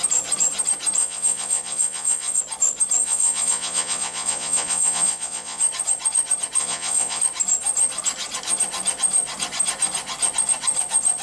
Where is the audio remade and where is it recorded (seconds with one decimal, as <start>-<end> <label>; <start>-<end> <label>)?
0.0-1.0 recorded; 1.0-2.4 remade; 2.4-3.0 recorded; 3.0-5.6 remade; 5.6-6.6 recorded; 6.6-7.2 remade; 7.2-11.2 recorded